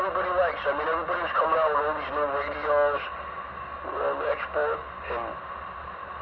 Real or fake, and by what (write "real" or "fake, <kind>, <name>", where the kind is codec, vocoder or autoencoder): real